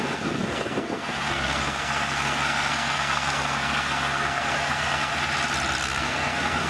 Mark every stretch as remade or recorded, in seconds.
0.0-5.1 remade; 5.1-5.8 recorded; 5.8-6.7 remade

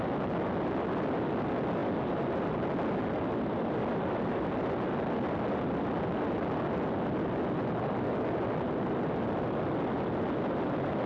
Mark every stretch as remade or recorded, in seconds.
0.0-11.1 recorded

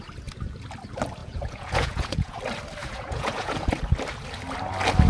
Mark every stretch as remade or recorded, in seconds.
0.0-1.2 recorded; 1.2-2.4 remade; 2.4-2.8 recorded; 2.8-3.7 remade; 3.7-5.1 recorded

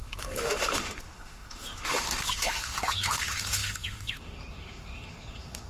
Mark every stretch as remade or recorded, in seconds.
0.0-5.7 remade

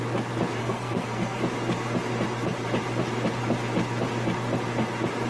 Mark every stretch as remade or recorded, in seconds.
0.0-0.6 recorded; 0.6-1.4 remade; 1.4-5.3 recorded

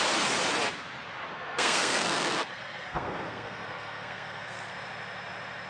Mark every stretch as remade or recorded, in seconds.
0.0-1.3 recorded; 1.3-4.7 remade; 4.7-5.7 recorded